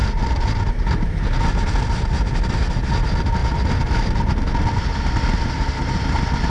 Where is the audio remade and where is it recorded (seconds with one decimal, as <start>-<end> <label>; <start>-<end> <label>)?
0.0-6.5 recorded